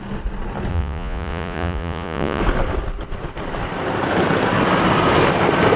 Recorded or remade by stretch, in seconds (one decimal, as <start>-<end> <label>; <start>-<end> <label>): 0.0-0.7 recorded; 0.7-2.4 remade; 2.4-5.8 recorded